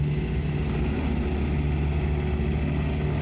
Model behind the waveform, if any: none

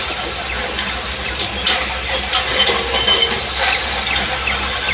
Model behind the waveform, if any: none